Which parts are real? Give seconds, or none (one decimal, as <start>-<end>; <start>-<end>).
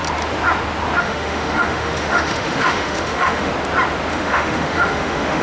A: 0.0-1.0; 3.5-4.1